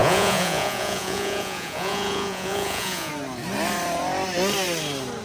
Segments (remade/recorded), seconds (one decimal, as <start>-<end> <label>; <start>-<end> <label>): 0.0-3.1 remade; 3.1-5.2 recorded